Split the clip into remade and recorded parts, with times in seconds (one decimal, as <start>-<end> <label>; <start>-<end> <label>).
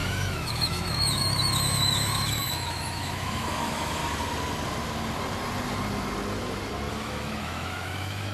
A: 0.0-4.0 remade; 4.0-6.9 recorded; 6.9-8.3 remade